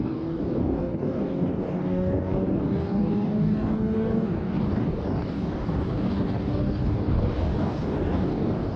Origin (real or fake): fake